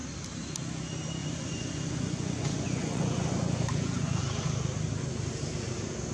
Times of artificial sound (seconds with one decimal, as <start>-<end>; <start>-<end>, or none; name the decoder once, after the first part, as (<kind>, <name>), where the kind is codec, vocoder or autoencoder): 1.2-4.2 (vocoder, Vocos)